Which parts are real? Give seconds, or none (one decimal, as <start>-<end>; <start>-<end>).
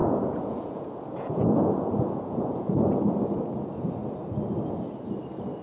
3.0-5.6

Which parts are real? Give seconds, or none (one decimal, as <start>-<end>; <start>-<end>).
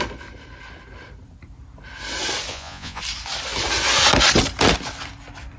0.0-2.5; 3.0-5.6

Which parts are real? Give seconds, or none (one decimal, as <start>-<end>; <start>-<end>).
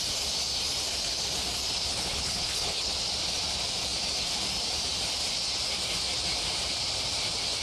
0.0-1.9; 2.9-7.6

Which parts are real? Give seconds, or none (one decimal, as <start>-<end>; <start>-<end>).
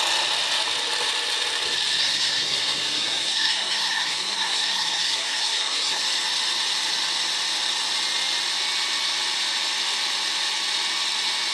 0.0-2.0; 6.0-11.5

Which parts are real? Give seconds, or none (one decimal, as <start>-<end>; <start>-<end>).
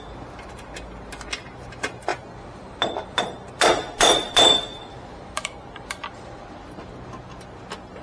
0.0-2.1; 6.9-8.0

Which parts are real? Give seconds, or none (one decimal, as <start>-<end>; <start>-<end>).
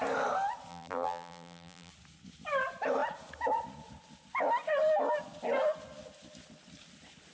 0.0-0.7; 1.9-7.3